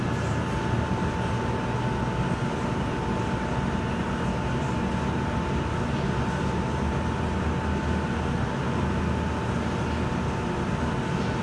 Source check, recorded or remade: recorded